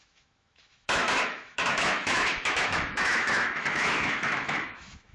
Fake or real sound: fake